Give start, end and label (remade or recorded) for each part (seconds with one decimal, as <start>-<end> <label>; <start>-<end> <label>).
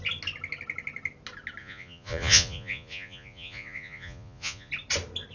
0.0-1.6 recorded; 1.6-4.7 remade; 4.7-5.3 recorded